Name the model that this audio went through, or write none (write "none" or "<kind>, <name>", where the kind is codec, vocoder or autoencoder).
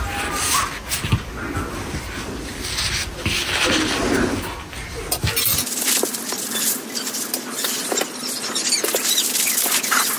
none